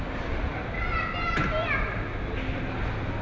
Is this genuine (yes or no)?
yes